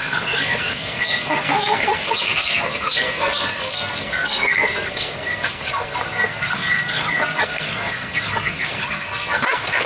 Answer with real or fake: fake